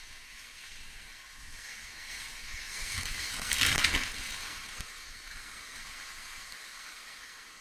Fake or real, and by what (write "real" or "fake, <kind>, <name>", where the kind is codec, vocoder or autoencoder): fake, codec, SNAC